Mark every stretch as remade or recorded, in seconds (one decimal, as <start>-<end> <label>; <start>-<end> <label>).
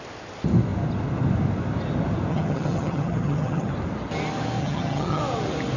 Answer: 0.0-2.3 recorded; 2.3-3.7 remade; 3.7-4.6 recorded; 4.6-5.2 remade; 5.2-5.8 recorded